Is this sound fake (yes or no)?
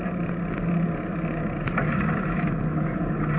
no